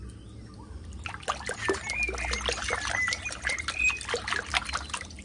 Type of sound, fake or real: real